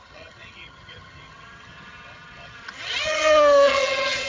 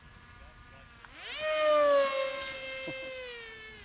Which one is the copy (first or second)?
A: first